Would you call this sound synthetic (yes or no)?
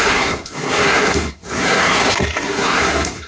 yes